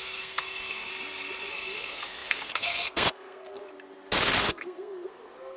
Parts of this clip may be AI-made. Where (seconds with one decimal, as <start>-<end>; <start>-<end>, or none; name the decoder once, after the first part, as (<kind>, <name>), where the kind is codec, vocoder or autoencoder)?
0.0-0.9 (codec, SNAC); 1.5-3.6; 4.4-5.6